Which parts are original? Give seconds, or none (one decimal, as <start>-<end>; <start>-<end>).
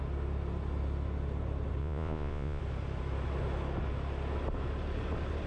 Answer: 0.0-1.8; 2.6-5.5